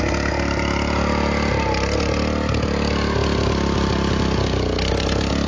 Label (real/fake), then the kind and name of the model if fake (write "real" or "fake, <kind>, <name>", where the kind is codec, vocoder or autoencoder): real